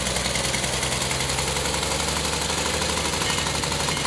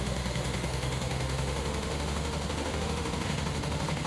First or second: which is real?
first